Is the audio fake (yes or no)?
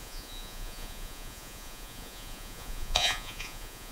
yes